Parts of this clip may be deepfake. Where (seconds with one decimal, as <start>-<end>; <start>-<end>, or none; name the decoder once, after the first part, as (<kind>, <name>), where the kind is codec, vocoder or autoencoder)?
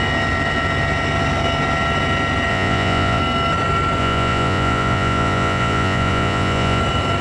2.5-3.2 (vocoder, Vocos); 4.0-6.8